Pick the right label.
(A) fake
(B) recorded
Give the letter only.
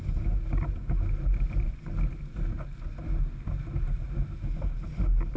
B